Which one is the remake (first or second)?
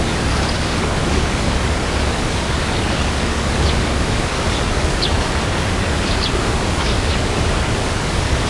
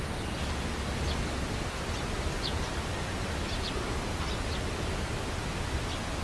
first